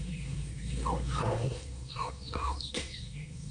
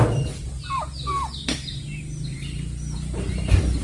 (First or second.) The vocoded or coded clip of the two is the first